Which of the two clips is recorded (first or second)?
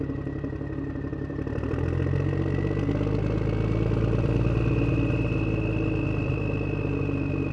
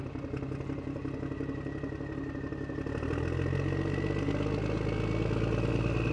second